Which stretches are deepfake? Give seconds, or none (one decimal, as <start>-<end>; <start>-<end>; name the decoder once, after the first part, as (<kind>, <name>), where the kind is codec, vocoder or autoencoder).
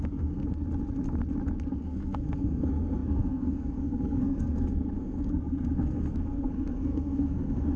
0.0-0.4 (codec, SNAC); 1.8-7.8